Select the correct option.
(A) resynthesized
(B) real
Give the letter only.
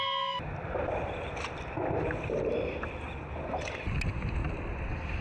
B